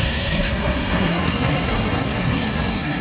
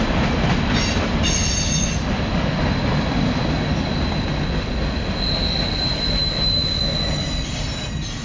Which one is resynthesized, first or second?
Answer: first